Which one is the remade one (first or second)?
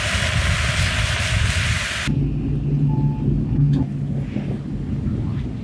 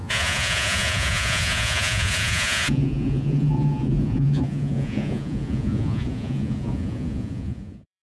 second